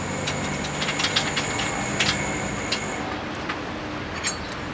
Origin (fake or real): real